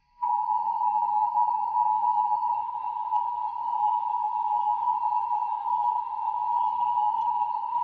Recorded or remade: remade